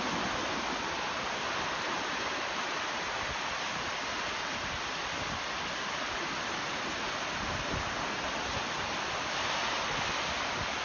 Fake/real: real